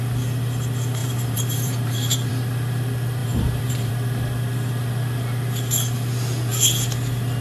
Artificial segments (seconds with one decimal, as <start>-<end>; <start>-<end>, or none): 1.0-2.3; 3.2-3.9

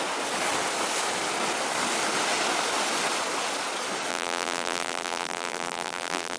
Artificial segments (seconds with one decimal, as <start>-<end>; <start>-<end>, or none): 4.1-6.4

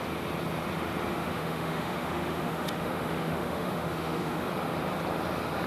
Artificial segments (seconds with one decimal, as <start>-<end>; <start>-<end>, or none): 1.1-4.5

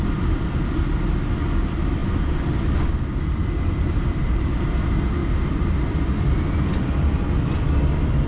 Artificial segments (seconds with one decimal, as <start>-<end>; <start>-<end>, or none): 4.1-4.6; 5.2-8.3

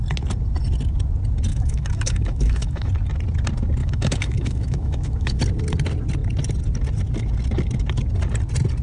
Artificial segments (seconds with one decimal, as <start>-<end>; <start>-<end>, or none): 1.5-2.9; 3.8-5.4

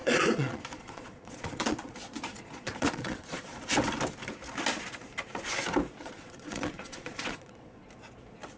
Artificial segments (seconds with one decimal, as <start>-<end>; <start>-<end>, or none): 0.0-3.6; 6.0-7.9